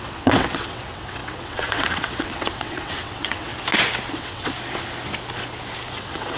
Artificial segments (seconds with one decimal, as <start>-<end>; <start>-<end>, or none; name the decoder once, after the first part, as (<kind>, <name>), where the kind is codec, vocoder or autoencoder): 0.0-3.5 (vocoder, WaveNeXt); 4.1-4.5; 5.9-6.4